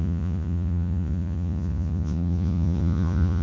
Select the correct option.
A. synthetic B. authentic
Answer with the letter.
A